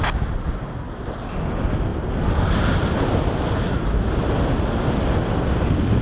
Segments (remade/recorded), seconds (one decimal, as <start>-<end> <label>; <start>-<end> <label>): 0.0-6.0 recorded